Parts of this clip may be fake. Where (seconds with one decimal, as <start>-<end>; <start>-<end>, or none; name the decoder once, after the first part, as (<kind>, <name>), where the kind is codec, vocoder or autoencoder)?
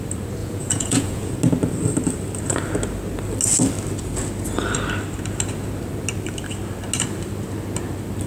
0.4-1.3 (vocoder, Vocos)